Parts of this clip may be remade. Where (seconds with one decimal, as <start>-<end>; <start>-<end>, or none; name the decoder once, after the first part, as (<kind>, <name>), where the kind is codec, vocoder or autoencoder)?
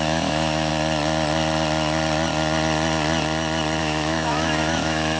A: 0.0-0.7 (autoencoder, DAC-VAE); 3.8-5.2